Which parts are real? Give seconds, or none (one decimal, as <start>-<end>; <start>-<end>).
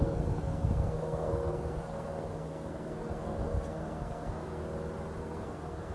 4.6-5.2